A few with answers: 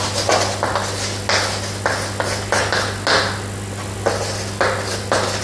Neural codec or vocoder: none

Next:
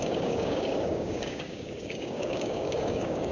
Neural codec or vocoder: codec, DAC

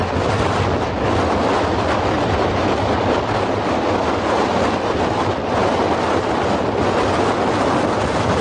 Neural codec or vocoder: none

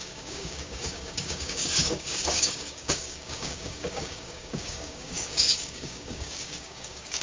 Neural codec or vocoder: codec, DAC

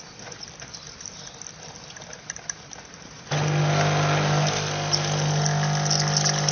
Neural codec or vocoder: none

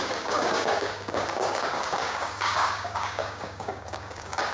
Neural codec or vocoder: codec, DAC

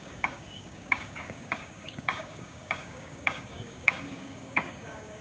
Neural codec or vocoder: codec, DAC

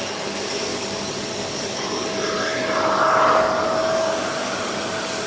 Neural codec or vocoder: codec, DAC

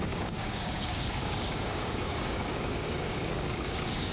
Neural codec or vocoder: codec, DAC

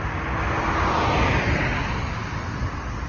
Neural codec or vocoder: none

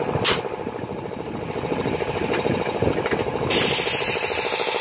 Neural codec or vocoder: none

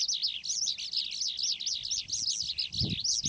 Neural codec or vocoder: none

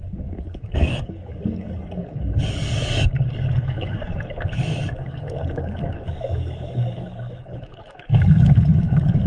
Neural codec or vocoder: codec, DAC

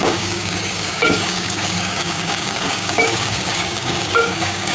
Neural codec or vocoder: codec, DAC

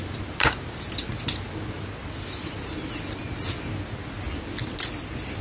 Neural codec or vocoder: none